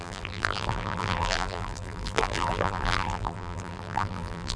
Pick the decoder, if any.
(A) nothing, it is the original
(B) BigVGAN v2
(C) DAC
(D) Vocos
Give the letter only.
B